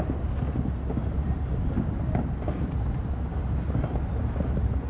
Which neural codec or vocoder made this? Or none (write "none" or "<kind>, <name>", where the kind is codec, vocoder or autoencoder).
none